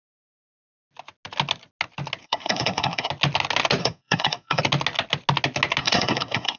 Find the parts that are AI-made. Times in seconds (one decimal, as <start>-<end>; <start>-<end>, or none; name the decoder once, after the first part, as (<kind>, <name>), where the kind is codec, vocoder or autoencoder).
2.2-3.1 (codec, SNAC); 3.8-4.6; 5.8-6.6